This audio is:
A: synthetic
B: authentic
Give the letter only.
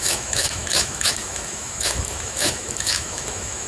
A